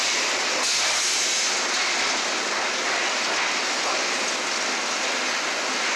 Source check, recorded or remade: recorded